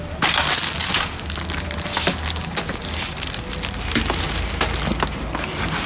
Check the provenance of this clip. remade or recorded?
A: recorded